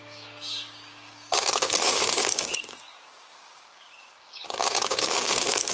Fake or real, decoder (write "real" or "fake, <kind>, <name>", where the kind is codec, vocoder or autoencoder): fake, codec, DAC